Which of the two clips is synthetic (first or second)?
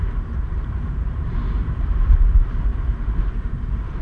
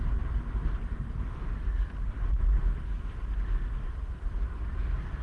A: first